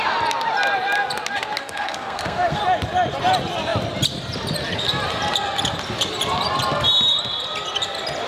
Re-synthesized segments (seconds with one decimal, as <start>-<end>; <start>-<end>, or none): 1.6-2.6